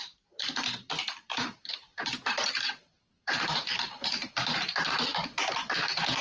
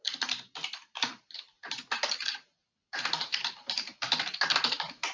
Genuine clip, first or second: second